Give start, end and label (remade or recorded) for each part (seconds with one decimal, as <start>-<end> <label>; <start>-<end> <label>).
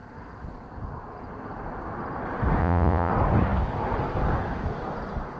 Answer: 0.0-2.6 recorded; 2.6-3.1 remade; 3.1-5.4 recorded